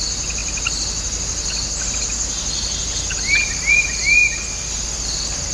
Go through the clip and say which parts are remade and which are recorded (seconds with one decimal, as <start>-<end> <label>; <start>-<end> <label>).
0.0-5.5 recorded